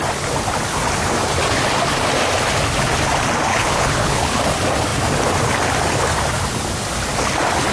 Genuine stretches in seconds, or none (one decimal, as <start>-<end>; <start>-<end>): 0.0-3.5; 4.4-7.7